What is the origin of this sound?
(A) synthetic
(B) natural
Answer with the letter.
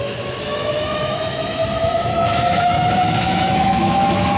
A